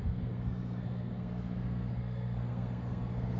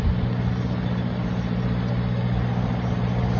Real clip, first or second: second